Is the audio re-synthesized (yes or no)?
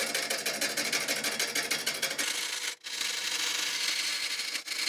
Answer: no